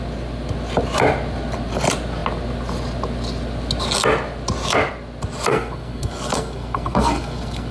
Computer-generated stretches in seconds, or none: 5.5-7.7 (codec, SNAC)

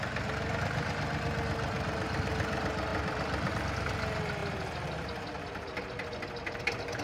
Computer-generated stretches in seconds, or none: none

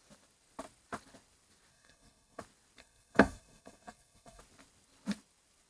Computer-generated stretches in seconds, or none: 1.7-2.4 (codec, SNAC); 2.8-4.4

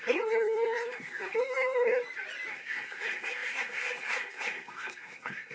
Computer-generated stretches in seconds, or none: 0.0-2.0 (codec, SNAC); 2.5-5.5